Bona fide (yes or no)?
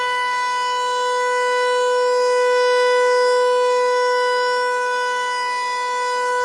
yes